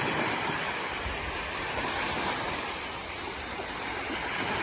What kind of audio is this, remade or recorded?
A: recorded